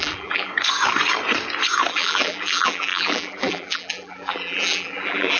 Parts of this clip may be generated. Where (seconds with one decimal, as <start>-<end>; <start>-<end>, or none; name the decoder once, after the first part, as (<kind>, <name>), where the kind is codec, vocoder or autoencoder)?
0.0-0.5 (vocoder, BigVGAN v2); 1.9-5.4